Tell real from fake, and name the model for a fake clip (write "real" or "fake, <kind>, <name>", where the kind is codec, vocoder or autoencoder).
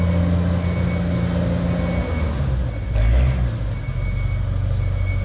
real